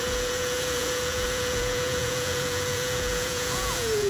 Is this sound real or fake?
fake